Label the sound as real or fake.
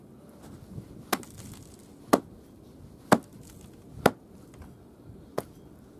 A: real